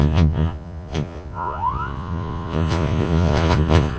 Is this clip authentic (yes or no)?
no